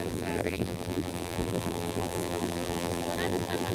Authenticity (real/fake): fake